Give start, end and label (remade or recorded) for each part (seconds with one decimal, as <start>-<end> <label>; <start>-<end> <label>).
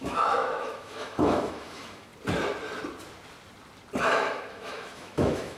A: 0.0-2.1 remade; 2.1-4.0 recorded; 4.0-5.6 remade